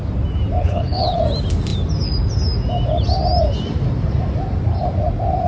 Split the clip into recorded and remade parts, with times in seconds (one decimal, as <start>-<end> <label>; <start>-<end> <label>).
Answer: 0.0-0.6 recorded; 0.6-1.2 remade; 1.2-5.5 recorded